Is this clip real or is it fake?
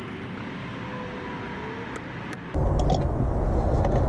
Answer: real